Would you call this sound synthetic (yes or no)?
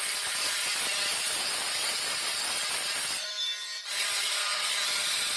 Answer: no